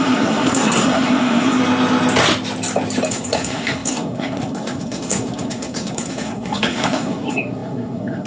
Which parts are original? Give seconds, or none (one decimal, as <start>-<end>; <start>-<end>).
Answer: 1.6-3.1